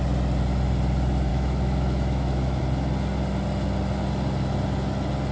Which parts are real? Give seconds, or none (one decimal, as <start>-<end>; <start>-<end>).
0.0-1.3; 2.6-5.3